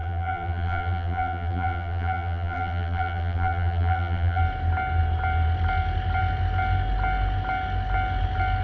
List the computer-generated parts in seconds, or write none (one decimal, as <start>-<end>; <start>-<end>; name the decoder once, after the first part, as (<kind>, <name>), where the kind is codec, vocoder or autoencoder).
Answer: 0.0-4.4 (vocoder, BigVGAN v2)